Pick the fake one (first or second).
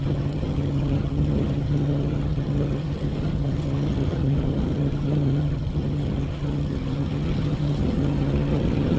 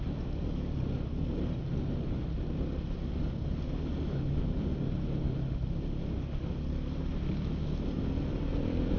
first